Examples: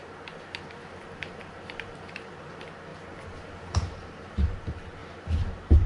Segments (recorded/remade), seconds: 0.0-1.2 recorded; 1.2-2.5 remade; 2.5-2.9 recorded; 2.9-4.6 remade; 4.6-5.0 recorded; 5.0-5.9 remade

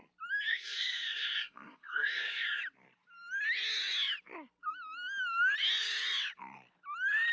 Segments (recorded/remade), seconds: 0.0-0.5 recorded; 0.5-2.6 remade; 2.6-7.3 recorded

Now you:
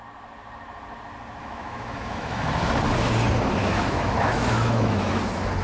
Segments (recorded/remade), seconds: 0.0-1.4 recorded; 1.4-2.5 remade; 2.5-3.6 recorded; 3.6-5.1 remade; 5.1-5.6 recorded